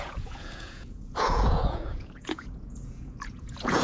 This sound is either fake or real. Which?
fake